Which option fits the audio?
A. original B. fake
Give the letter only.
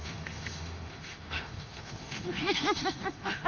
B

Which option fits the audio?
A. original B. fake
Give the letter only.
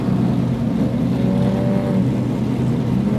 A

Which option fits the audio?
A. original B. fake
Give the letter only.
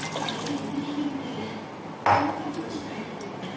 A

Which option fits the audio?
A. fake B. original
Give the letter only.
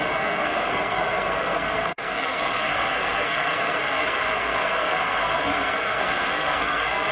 A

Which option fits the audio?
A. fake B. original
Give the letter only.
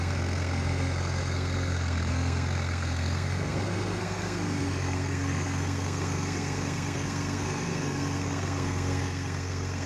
A